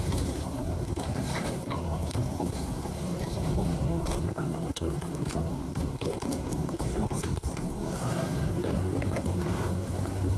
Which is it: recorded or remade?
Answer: remade